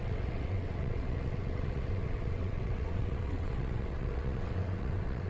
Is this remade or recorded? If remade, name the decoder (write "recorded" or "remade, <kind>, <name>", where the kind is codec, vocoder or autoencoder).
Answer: remade, vocoder, WaveNeXt